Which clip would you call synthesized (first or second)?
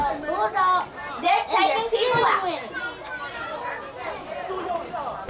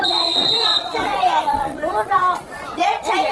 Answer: second